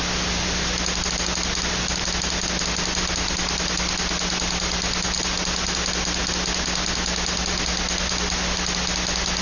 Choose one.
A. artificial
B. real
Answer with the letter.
B